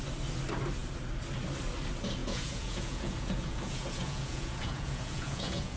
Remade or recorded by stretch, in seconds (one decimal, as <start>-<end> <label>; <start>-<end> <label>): 0.0-2.2 recorded; 2.2-5.8 remade